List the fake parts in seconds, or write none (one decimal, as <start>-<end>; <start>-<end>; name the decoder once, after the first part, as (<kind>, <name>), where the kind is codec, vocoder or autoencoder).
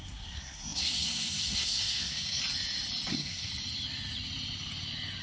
0.0-2.4 (codec, SNAC); 3.1-3.5